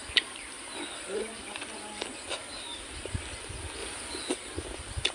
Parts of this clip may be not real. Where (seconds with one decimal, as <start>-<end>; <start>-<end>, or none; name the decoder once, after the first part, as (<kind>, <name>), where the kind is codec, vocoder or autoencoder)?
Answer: 0.0-3.8 (vocoder, BigVGAN v2); 4.3-5.1